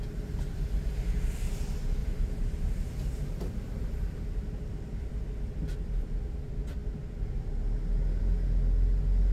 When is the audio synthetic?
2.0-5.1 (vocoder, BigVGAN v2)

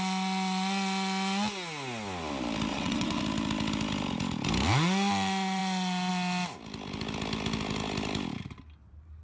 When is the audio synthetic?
2.7-3.2 (vocoder, WaveNeXt)

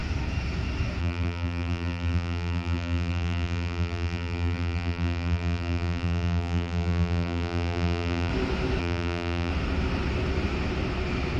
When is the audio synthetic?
1.0-8.3 (vocoder, BigVGAN v2); 8.8-9.5

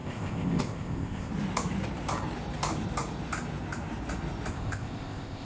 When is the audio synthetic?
0.0-1.3 (codec, ZipCodec); 4.5-5.4

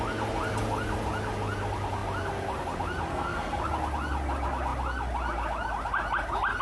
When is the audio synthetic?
3.1-3.6 (codec, SNAC)

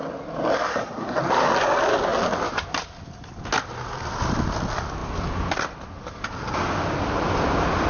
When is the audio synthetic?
0.7-1.2 (codec, SNAC)

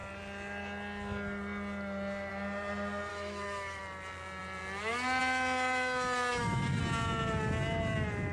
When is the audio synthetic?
3.1-3.8 (autoencoder, DAC-VAE); 6.3-6.8

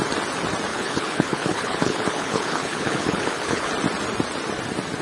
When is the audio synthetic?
0.7-3.7 (codec, HILCodec)